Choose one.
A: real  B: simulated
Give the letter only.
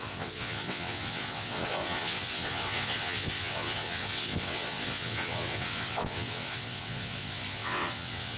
B